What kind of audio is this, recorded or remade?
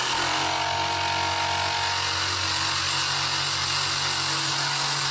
recorded